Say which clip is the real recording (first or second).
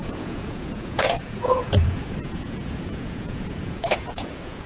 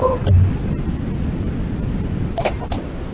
second